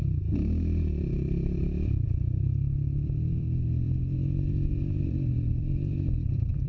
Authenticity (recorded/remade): remade